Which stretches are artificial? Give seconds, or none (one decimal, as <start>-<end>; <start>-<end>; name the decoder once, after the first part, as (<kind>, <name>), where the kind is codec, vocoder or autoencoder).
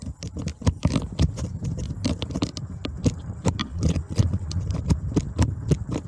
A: 3.6-4.6 (vocoder, Vocos)